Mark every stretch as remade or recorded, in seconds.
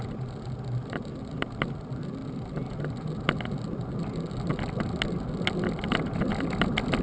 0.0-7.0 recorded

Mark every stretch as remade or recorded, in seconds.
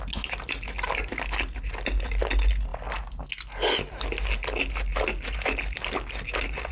0.0-6.7 recorded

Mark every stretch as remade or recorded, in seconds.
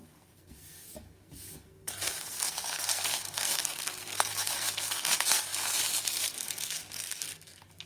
0.0-7.9 remade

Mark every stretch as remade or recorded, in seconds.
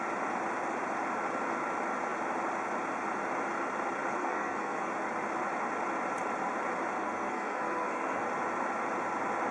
0.0-4.2 recorded; 4.2-4.9 remade; 4.9-7.0 recorded; 7.0-8.2 remade; 8.2-9.5 recorded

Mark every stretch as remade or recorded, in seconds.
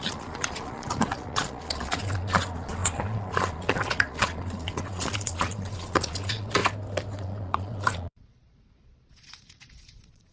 0.0-6.6 remade; 6.6-7.2 recorded; 7.2-10.3 remade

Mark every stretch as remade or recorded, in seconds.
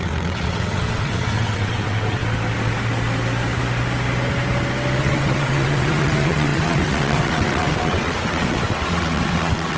0.0-2.2 remade; 2.2-5.0 recorded; 5.0-9.8 remade